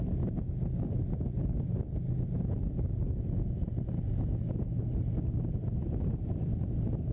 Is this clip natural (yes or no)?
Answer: yes